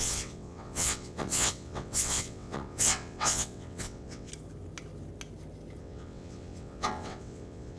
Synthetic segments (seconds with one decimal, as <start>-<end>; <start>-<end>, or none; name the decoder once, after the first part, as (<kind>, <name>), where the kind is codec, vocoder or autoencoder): 0.0-4.3 (vocoder, WaveNeXt); 5.8-7.8